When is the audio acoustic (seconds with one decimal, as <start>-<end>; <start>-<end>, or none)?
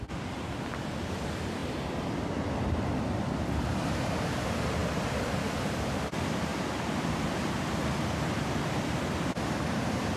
6.5-7.1